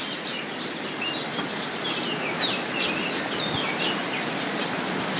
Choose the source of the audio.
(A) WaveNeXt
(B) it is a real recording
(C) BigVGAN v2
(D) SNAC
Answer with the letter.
B